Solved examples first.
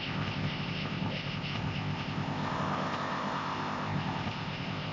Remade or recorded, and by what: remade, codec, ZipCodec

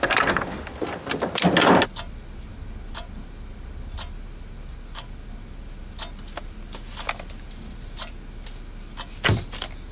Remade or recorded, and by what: recorded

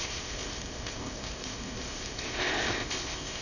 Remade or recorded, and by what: remade, codec, ZipCodec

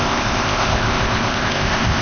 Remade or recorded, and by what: remade, codec, ZipCodec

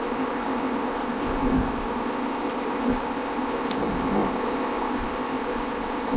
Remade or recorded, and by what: remade, codec, ZipCodec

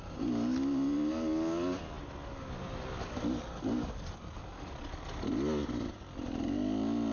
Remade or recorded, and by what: recorded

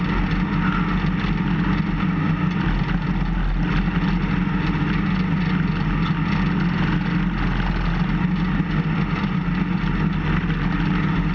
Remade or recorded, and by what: recorded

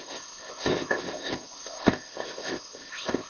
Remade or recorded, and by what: remade, codec, ZipCodec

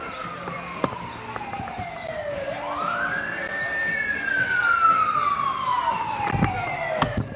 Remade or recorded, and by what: recorded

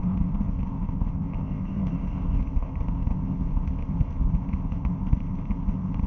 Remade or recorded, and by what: remade, codec, ZipCodec